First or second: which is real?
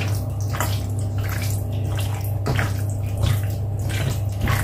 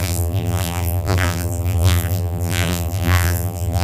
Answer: first